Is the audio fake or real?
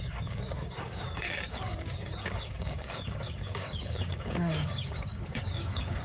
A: fake